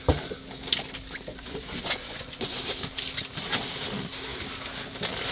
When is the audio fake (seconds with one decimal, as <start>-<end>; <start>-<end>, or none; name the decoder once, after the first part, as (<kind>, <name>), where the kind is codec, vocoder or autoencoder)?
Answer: 1.3-2.6 (vocoder, Vocos)